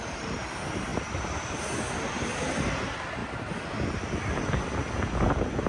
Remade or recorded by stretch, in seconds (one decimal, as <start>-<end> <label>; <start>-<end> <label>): 0.0-5.7 recorded